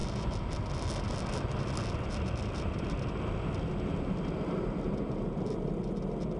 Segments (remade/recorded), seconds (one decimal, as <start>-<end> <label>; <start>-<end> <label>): 0.0-6.4 recorded